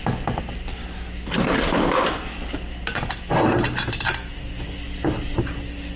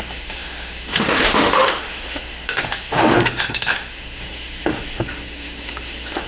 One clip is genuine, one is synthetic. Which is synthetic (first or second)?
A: second